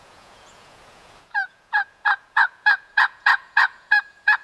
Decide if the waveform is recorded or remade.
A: remade